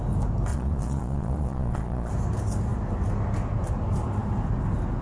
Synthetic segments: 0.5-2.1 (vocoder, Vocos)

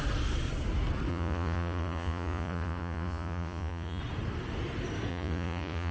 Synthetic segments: 1.1-4.0 (vocoder, Vocos); 5.1-5.9

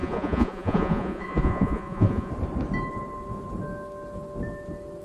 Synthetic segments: 0.0-2.3 (vocoder, Vocos)

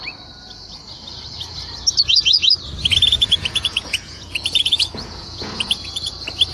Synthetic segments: 3.1-6.1 (vocoder, Vocos)